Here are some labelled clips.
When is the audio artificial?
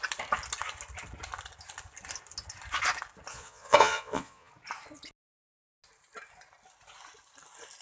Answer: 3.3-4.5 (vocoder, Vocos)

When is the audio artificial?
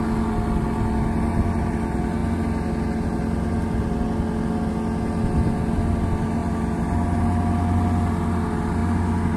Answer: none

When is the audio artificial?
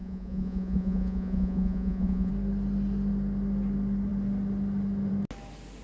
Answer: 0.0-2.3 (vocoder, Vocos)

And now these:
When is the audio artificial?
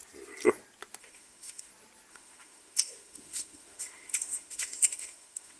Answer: 1.0-1.7 (autoencoder, DAC-VAE); 2.1-5.6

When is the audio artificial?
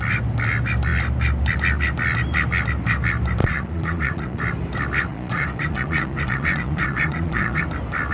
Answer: 3.4-4.4 (vocoder, Vocos); 5.1-7.6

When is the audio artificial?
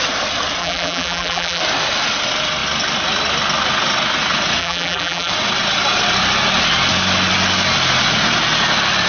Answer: 0.6-1.6 (vocoder, BigVGAN v2); 4.6-5.3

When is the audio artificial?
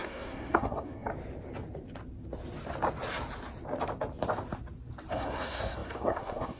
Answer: 0.0-1.1 (codec, SNAC); 5.1-6.6